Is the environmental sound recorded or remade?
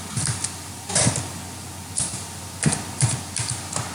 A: recorded